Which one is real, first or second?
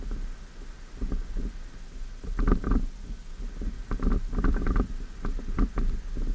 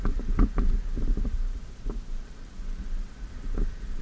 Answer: first